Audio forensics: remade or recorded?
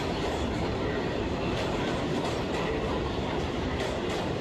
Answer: remade